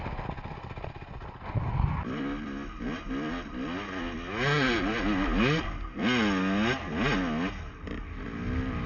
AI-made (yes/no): no